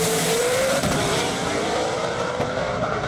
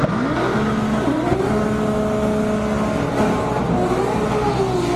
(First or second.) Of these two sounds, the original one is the second